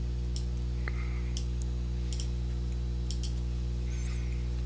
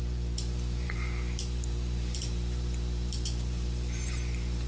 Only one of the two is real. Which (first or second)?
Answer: first